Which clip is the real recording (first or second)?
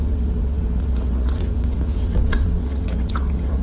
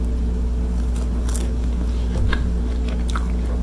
second